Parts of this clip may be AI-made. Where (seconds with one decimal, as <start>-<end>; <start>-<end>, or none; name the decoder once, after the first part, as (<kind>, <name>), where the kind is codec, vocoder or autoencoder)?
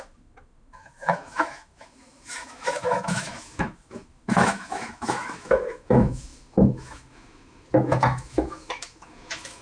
0.0-9.6 (autoencoder, DAC-VAE)